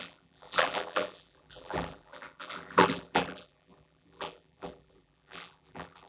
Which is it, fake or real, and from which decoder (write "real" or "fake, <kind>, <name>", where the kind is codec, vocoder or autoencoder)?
fake, vocoder, BigVGAN v2